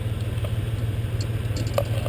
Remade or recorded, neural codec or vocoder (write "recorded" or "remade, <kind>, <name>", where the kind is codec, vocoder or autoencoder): recorded